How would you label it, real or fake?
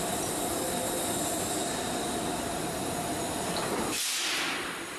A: real